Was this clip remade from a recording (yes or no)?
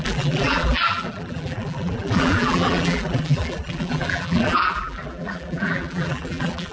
yes